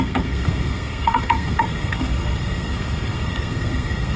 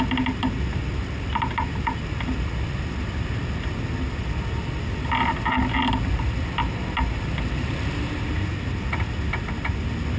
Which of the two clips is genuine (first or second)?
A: second